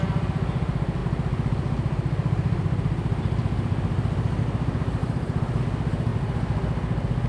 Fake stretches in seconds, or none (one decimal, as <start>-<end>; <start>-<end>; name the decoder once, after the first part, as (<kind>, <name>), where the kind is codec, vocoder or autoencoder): 5.0-5.6 (vocoder, BigVGAN v2)